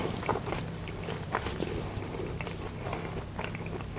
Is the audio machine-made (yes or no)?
no